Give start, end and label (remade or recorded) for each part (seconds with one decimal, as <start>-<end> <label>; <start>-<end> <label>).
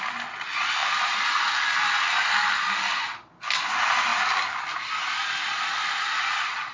0.0-6.7 recorded